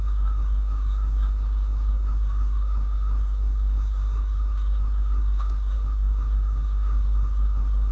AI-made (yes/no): yes